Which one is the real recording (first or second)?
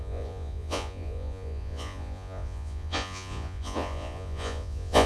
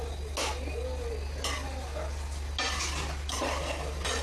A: second